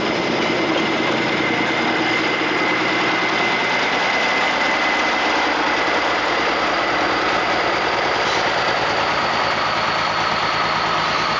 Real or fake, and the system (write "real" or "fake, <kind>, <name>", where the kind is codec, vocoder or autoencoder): real